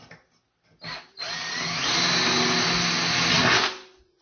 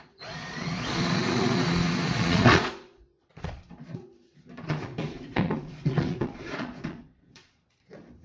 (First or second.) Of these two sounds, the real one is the first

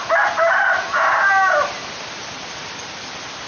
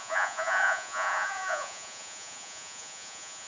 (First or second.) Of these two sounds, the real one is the first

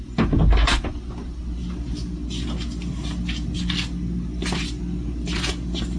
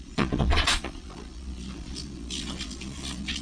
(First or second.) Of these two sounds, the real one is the first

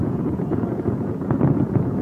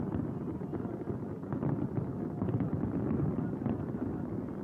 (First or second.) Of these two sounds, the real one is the second